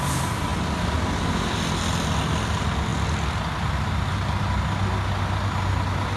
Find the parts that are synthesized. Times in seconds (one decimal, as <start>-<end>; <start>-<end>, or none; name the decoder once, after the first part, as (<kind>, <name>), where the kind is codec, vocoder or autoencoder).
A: none

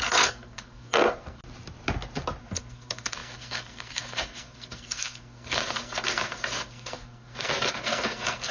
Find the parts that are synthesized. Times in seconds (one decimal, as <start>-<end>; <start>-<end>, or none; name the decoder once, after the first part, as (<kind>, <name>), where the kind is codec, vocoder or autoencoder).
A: 0.0-1.4 (codec, SNAC); 2.4-8.5

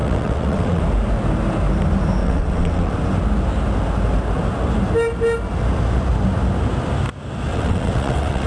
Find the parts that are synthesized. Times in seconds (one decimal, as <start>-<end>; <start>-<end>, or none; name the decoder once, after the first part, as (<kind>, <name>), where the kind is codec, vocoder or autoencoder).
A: 0.0-0.8 (vocoder, WaveNeXt); 2.2-2.9; 7.5-8.5

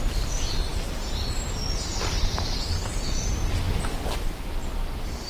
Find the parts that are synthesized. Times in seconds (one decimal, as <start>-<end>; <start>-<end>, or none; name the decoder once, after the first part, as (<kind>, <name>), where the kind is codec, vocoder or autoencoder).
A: none

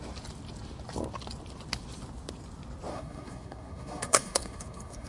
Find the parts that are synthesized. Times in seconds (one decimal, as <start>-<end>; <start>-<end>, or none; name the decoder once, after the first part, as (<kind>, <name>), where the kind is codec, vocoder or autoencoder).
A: 2.9-5.1 (codec, SNAC)

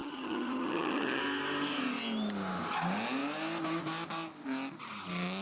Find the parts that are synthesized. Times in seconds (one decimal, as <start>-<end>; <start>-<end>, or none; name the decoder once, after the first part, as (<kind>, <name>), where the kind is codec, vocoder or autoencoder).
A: 0.0-1.2 (vocoder, HiFi-GAN)

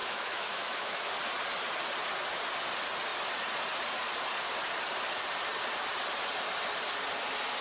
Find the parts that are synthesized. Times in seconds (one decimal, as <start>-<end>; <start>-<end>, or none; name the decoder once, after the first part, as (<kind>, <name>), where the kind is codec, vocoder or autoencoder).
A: 0.0-1.1 (autoencoder, DAC-VAE)